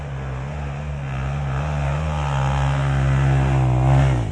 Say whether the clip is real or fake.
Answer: real